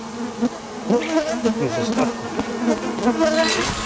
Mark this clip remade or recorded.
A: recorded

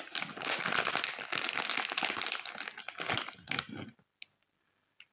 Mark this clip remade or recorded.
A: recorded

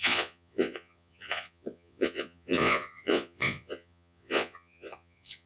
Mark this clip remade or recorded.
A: remade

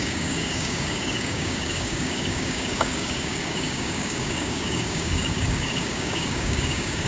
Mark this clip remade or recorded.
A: remade